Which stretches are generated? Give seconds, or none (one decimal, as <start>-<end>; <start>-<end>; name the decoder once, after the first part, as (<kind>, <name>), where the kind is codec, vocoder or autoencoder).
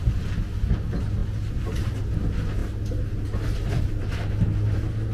none